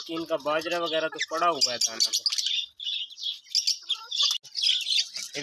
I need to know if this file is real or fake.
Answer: real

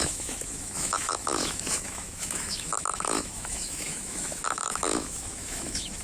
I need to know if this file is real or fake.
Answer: fake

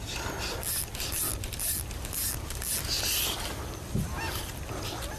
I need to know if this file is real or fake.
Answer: real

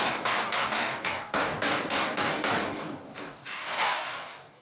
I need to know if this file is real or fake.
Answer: fake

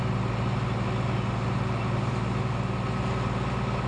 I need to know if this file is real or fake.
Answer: real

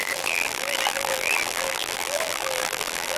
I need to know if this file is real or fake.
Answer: fake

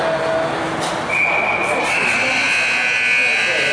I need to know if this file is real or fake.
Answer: real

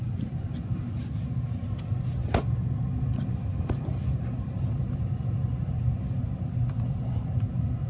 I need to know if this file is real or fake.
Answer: real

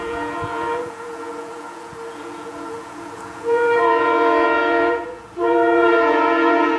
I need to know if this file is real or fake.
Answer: fake